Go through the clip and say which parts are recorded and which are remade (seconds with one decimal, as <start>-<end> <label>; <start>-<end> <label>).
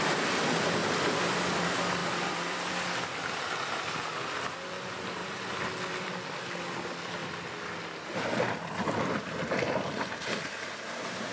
0.0-0.8 recorded; 0.8-1.6 remade; 1.6-2.0 recorded; 2.0-2.7 remade; 2.7-5.2 recorded; 5.2-6.3 remade; 6.3-11.3 recorded